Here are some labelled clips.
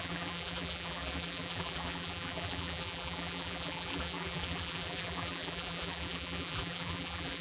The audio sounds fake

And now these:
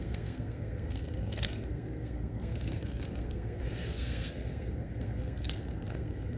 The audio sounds fake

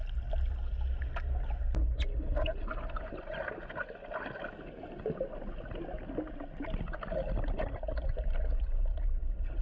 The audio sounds real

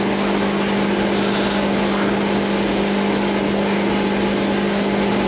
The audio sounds real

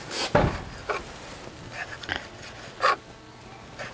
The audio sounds real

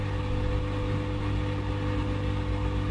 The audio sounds real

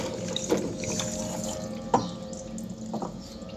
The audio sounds real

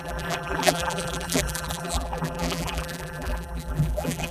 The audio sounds fake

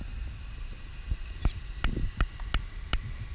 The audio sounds real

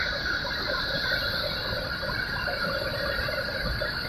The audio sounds real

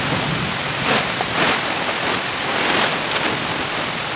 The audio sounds real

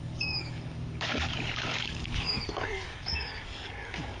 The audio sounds fake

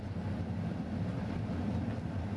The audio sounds real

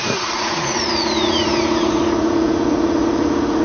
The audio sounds fake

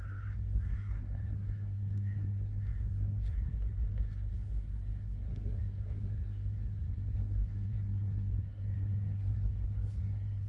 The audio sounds fake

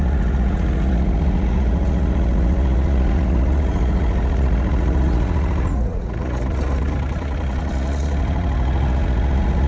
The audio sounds fake